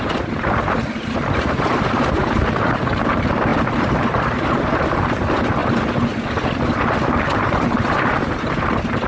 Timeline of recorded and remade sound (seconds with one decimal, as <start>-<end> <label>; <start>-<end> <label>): 0.0-5.6 remade; 5.6-6.8 recorded; 6.8-9.1 remade